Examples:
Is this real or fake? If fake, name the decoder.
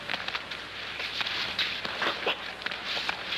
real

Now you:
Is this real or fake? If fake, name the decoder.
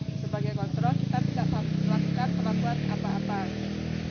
real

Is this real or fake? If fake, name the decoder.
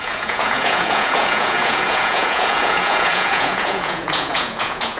fake, vocoder, Vocos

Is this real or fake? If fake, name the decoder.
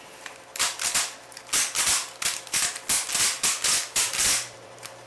real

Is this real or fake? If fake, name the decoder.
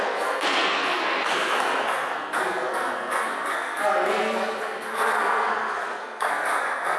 fake, codec, SNAC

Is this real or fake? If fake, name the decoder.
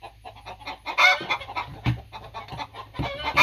real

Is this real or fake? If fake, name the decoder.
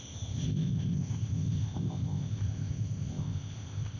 fake, codec, ZipCodec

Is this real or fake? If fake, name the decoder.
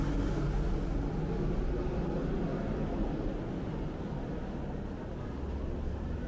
real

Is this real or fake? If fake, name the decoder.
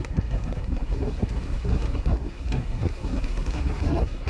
fake, codec, SNAC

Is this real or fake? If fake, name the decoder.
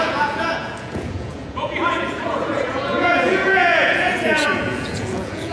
fake, vocoder, Vocos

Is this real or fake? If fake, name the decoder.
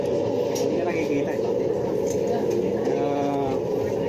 real